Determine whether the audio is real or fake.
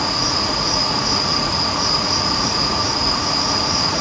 fake